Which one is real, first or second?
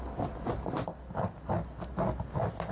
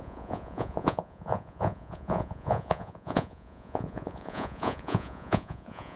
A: first